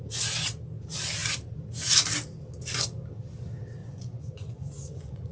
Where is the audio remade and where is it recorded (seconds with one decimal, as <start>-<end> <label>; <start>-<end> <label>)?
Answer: 0.0-3.8 recorded; 3.8-5.3 remade